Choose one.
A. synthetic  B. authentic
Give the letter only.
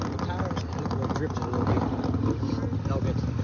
B